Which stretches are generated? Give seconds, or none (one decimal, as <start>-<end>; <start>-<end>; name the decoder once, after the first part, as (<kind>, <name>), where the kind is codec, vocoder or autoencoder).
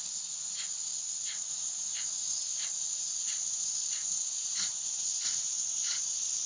0.0-2.4 (vocoder, Vocos); 4.7-6.5